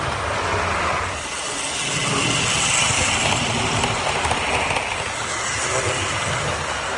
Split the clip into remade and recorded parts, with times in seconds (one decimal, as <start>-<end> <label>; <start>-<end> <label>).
0.0-7.0 recorded